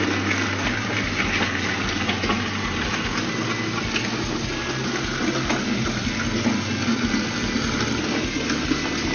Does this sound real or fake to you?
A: real